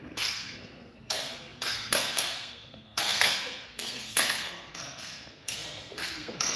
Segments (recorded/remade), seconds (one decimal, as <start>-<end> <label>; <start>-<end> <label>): 0.0-6.6 remade